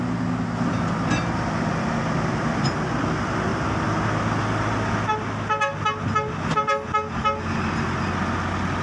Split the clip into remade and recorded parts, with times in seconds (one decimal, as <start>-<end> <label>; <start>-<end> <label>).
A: 0.0-8.8 recorded